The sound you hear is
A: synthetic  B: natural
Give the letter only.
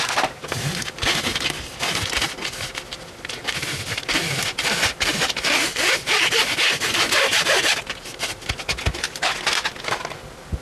B